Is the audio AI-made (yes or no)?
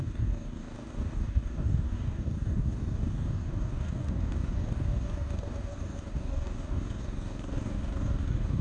yes